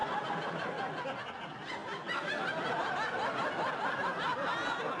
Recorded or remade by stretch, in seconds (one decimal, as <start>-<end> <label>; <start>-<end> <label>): 0.0-5.0 recorded